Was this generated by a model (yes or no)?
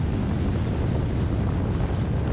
no